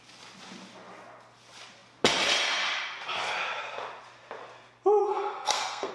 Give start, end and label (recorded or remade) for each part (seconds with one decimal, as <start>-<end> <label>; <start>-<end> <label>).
0.0-5.0 recorded; 5.0-5.9 remade